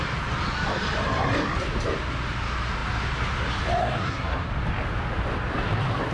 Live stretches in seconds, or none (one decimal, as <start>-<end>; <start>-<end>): 0.0-3.8; 4.5-6.1